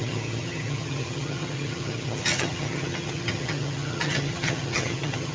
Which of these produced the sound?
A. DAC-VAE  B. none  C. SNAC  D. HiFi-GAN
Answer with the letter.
D